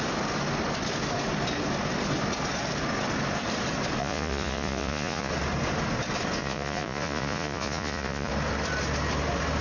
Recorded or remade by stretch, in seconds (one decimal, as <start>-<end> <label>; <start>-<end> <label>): 0.0-4.0 recorded; 4.0-5.3 remade; 5.3-6.4 recorded; 6.4-8.3 remade; 8.3-9.6 recorded